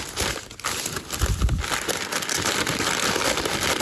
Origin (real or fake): real